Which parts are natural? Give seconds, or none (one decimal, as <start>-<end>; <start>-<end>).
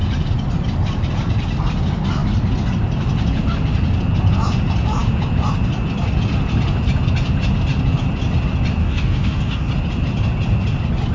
0.0-8.8; 9.7-11.1